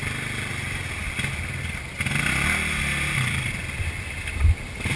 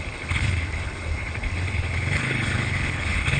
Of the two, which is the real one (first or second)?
first